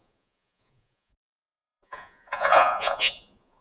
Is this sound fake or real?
fake